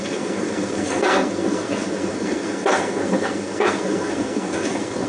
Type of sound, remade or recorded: remade